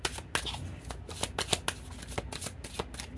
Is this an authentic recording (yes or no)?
yes